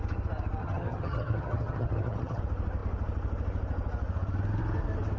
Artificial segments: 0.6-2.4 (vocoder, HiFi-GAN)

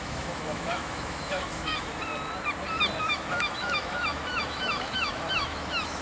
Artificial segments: 0.0-2.1 (autoencoder, DAC-VAE); 3.0-6.0